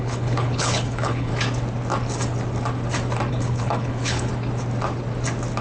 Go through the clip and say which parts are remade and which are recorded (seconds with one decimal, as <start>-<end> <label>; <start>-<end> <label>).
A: 0.0-1.3 remade; 1.3-3.3 recorded; 3.3-4.3 remade; 4.3-5.6 recorded